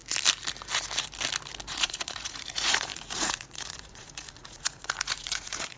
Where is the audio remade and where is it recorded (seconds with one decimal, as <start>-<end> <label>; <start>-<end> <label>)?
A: 0.0-1.7 recorded; 1.7-5.8 remade